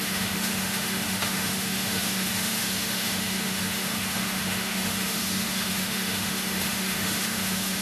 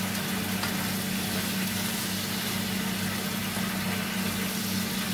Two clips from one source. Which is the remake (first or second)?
first